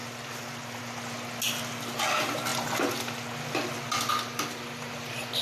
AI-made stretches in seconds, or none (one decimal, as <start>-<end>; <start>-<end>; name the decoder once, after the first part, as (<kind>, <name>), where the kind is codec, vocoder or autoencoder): none